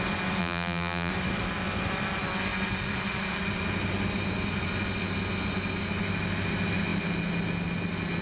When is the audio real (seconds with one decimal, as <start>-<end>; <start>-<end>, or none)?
0.0-0.4; 1.1-8.2

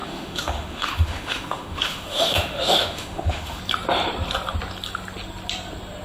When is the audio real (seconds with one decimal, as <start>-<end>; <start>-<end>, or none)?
3.6-6.0

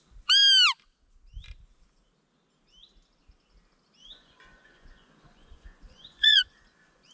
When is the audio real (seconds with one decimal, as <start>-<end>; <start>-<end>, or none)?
0.0-4.0

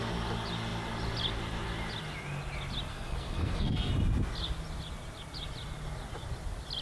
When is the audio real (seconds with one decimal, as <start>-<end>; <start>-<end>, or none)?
0.0-2.9; 3.9-6.8

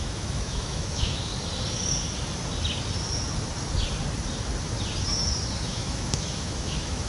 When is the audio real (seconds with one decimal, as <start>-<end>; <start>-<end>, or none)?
1.3-5.6

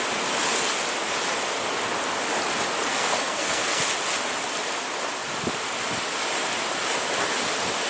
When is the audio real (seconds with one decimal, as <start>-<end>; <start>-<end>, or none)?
0.0-2.9; 3.8-7.9

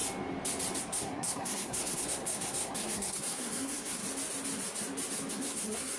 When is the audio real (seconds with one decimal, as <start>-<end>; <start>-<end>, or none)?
0.0-0.8; 4.0-5.3